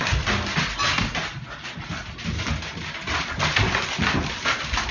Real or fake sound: real